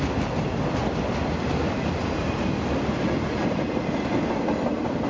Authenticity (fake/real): real